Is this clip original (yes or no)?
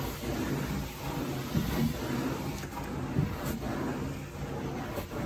yes